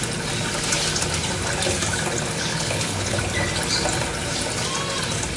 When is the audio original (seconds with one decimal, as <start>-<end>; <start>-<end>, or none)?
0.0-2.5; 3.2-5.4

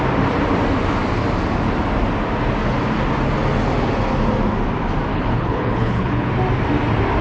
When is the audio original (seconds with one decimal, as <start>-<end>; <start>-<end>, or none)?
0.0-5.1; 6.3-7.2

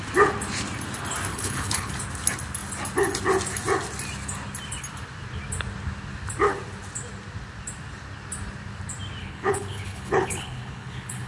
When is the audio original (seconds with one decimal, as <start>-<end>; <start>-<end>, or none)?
0.0-1.3; 1.9-9.2

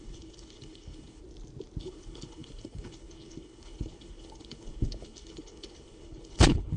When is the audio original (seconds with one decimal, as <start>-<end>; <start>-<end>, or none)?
1.2-1.8

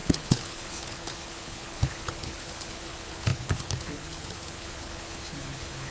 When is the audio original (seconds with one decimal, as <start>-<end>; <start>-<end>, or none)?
none

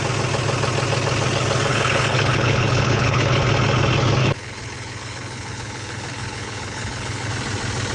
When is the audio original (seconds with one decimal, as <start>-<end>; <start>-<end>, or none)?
0.0-1.7; 3.4-4.2; 7.3-7.9

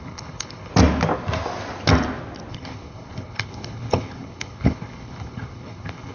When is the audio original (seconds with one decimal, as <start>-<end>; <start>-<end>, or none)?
0.7-2.5

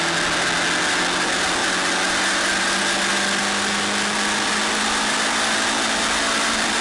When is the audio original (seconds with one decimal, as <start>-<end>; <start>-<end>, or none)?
0.0-6.8